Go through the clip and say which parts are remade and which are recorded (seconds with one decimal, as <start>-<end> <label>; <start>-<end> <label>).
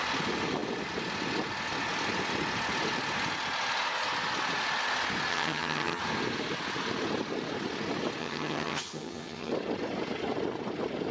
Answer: 0.0-5.3 recorded; 5.3-6.0 remade; 6.0-8.2 recorded; 8.2-9.5 remade; 9.5-11.1 recorded